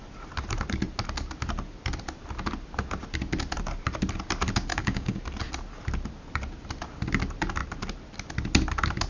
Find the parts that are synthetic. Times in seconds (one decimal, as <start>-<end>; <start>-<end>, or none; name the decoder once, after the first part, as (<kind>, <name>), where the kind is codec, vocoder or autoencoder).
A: 4.7-5.2 (codec, DAC)